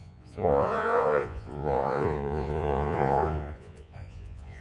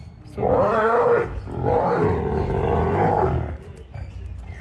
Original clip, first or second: second